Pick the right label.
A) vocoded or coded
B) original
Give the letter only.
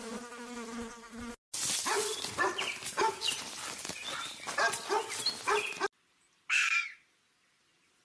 B